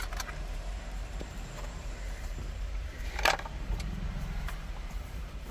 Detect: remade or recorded remade